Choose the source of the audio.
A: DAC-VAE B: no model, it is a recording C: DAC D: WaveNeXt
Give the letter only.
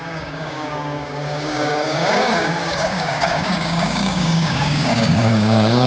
C